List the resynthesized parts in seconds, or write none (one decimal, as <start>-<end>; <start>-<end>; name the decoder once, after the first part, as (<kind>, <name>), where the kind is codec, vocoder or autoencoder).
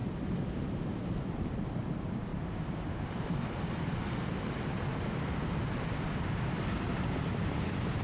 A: 0.0-0.8 (vocoder, BigVGAN v2); 2.3-7.1